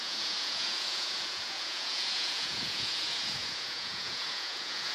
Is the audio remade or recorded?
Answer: remade